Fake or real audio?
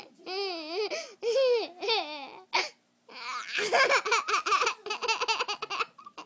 real